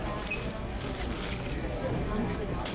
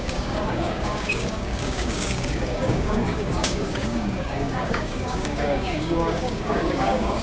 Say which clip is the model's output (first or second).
second